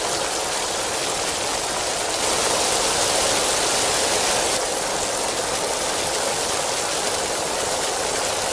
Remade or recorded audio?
recorded